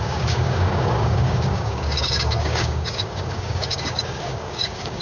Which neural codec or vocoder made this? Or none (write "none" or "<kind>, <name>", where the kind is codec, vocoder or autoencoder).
codec, DAC